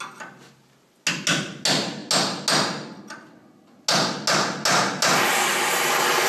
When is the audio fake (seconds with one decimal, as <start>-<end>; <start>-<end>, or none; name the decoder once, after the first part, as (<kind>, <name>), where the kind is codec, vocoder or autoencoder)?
none

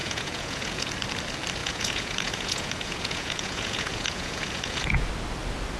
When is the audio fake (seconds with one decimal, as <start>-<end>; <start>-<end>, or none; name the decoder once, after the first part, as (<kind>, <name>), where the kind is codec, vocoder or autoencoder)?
0.0-0.9 (vocoder, Vocos); 1.6-5.1

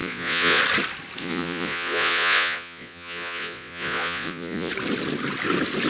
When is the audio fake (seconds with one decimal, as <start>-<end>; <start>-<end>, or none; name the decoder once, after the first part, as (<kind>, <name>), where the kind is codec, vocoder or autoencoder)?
0.0-0.6 (vocoder, Vocos); 1.2-4.7